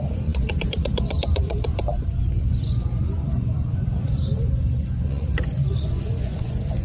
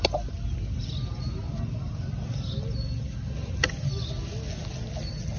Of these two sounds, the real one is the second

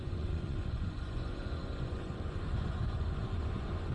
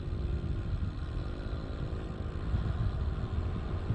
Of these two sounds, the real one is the second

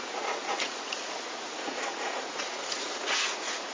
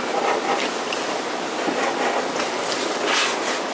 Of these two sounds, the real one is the second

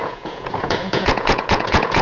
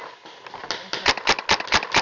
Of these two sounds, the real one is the second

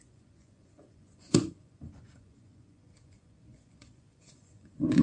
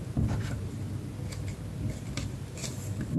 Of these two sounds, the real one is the second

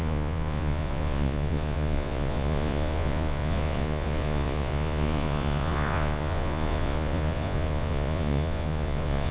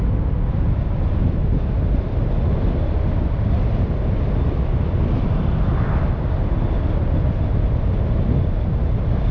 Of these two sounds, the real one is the second